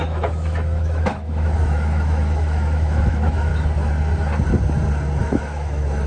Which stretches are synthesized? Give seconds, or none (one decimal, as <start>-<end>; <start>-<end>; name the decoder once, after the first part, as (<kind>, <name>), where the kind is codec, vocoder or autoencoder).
0.0-3.5 (autoencoder, DAC-VAE); 5.2-6.1